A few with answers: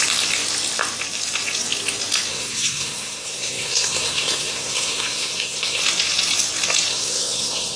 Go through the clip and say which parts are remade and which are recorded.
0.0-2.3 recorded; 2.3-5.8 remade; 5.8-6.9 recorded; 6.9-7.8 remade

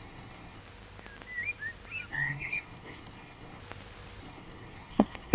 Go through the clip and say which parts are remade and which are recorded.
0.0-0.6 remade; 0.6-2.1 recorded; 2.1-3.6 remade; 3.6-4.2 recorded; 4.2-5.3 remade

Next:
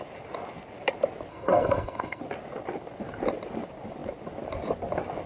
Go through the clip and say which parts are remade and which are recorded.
0.0-1.3 recorded; 1.3-2.2 remade; 2.2-5.3 recorded

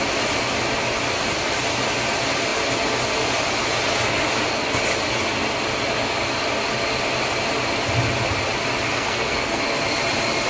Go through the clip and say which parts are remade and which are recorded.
0.0-8.9 recorded; 8.9-9.6 remade; 9.6-10.5 recorded

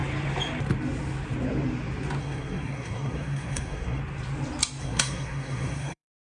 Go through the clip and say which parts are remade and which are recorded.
0.0-2.2 recorded; 2.2-4.0 remade; 4.0-4.8 recorded; 4.8-6.3 remade